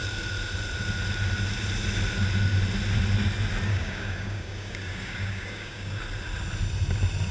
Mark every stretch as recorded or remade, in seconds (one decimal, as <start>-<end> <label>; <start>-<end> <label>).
0.0-3.7 recorded; 3.7-6.0 remade; 6.0-7.3 recorded